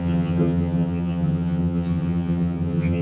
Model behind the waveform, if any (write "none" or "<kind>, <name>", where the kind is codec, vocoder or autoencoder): vocoder, HiFi-GAN